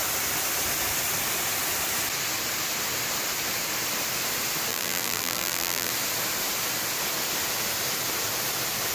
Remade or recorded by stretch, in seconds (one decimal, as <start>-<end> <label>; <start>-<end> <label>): 0.0-4.7 recorded; 4.7-5.9 remade; 5.9-8.9 recorded